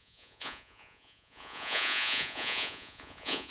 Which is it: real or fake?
fake